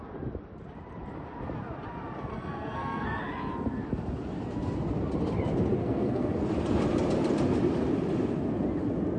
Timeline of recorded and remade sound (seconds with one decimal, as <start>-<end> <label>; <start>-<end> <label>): 0.0-2.3 recorded; 2.3-3.2 remade; 3.2-5.8 recorded; 5.8-6.3 remade; 6.3-9.2 recorded